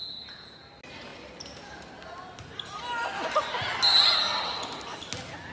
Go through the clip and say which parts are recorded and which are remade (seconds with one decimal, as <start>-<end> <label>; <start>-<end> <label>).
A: 0.0-0.7 remade; 0.7-5.5 recorded